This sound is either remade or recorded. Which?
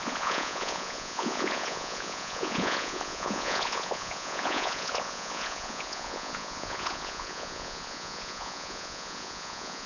remade